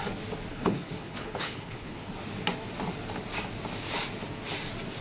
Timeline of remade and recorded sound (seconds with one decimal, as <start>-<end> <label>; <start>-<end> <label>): 0.0-0.5 recorded; 0.5-2.1 remade; 2.1-5.0 recorded